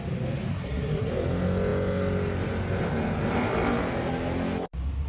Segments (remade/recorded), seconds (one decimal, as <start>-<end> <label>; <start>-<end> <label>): 0.0-0.5 recorded; 0.5-1.1 remade; 1.1-5.1 recorded